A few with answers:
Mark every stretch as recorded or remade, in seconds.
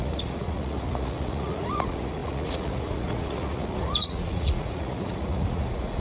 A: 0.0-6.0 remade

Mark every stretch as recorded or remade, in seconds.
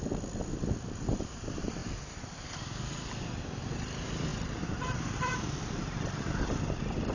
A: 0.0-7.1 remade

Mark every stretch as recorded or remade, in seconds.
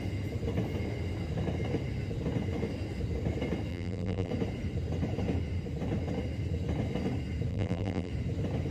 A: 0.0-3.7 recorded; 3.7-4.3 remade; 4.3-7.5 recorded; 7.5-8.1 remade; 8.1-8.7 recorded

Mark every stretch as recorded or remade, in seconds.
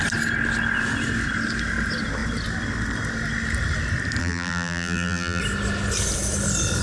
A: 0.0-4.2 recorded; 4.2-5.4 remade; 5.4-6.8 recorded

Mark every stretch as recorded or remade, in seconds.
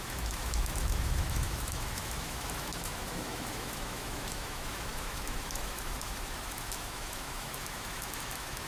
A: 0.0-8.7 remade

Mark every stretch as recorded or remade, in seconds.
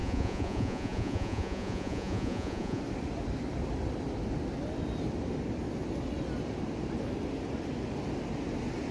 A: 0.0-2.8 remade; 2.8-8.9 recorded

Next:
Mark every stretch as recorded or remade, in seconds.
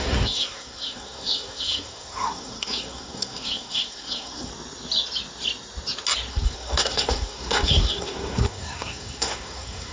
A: 0.0-4.5 remade; 4.5-6.3 recorded; 6.3-9.9 remade